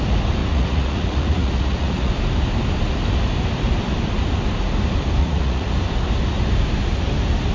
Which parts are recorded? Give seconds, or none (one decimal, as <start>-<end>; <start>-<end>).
0.0-0.4; 2.1-5.2; 5.7-7.5